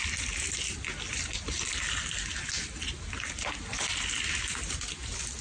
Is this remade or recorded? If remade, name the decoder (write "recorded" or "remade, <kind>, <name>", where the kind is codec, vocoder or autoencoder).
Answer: recorded